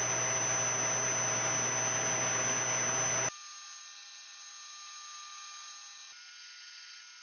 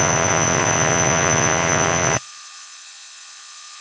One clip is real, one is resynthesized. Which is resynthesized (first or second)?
second